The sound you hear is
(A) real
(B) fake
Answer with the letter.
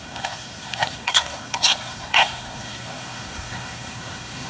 B